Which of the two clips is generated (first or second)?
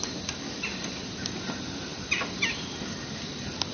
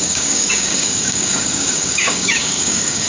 second